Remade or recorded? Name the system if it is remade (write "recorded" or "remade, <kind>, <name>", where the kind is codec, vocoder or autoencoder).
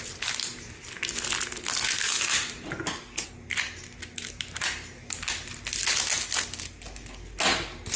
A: recorded